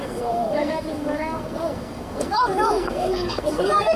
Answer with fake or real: fake